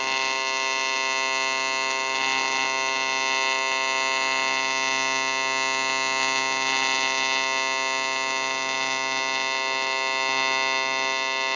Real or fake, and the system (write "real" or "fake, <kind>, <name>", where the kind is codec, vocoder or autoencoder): real